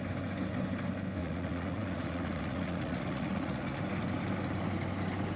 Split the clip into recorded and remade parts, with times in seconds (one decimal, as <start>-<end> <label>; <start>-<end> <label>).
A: 0.0-1.2 recorded; 1.2-3.8 remade; 3.8-5.4 recorded